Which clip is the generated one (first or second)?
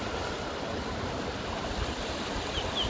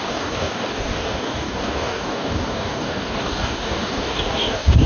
second